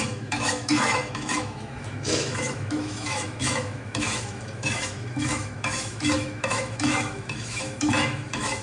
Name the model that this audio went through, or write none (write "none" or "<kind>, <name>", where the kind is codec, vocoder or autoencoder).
autoencoder, DAC-VAE